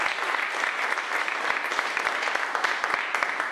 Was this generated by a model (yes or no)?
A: no